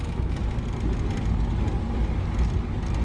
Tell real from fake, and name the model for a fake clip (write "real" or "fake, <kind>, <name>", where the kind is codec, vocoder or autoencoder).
real